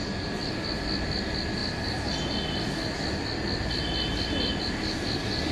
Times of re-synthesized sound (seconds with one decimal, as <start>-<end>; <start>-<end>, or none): none